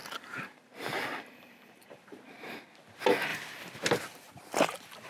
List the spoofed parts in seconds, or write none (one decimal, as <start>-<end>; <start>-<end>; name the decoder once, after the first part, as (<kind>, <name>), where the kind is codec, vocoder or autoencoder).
0.0-2.2 (vocoder, BigVGAN v2)